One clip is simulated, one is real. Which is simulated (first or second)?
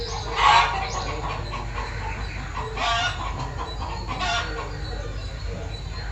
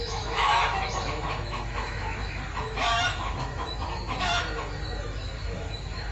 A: second